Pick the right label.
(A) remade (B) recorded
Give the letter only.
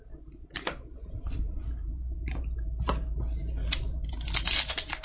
A